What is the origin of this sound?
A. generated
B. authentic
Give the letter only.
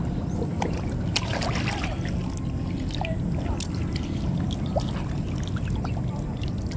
B